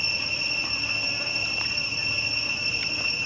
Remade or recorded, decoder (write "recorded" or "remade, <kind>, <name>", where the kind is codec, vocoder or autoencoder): recorded